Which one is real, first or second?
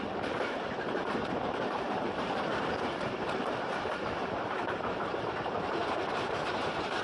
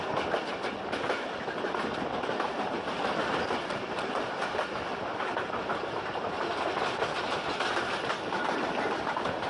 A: second